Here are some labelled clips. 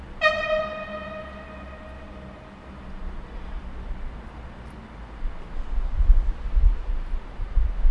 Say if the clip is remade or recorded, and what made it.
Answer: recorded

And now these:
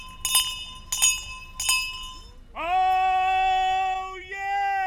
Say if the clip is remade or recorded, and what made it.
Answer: recorded